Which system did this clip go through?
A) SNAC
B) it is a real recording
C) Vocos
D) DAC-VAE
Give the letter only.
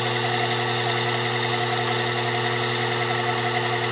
B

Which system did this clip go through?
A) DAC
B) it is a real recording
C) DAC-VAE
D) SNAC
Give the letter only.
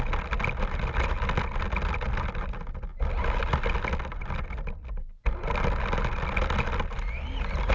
B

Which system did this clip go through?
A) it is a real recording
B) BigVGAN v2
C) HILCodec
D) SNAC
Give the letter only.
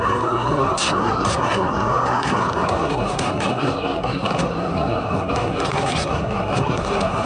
D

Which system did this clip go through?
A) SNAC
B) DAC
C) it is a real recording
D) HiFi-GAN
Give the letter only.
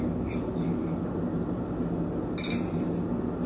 C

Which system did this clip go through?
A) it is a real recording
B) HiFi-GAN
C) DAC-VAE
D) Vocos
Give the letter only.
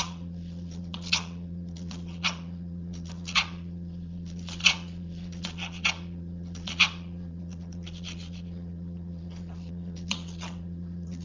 D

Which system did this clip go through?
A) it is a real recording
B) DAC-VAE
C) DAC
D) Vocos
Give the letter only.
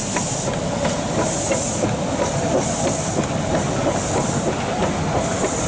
A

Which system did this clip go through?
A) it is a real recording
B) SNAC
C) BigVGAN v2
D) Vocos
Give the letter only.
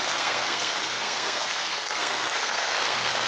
B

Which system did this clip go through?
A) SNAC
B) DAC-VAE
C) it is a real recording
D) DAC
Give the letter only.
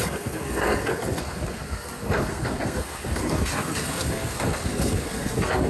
A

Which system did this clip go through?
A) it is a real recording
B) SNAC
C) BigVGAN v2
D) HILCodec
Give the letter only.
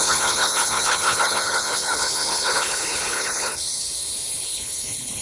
D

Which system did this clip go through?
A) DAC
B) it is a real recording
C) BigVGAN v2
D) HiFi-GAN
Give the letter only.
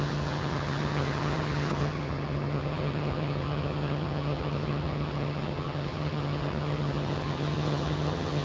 D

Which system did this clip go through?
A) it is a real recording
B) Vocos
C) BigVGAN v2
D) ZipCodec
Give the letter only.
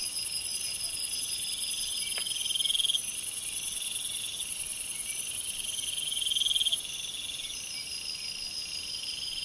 A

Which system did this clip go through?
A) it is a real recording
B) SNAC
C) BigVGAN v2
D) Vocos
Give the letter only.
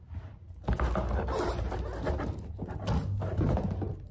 A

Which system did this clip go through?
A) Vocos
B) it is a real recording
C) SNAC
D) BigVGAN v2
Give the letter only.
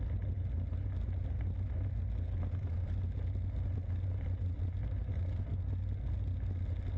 B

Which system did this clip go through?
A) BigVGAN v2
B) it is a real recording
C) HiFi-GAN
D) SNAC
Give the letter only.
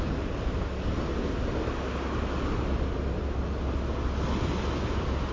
B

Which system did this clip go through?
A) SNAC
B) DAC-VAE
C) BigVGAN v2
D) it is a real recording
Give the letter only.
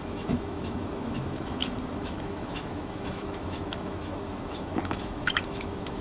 B